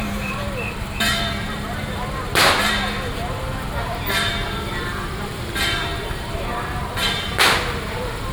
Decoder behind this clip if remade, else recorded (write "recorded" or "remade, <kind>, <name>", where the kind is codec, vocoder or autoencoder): remade, vocoder, BigVGAN v2